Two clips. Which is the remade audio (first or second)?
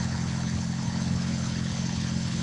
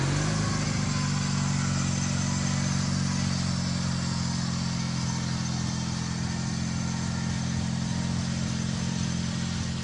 first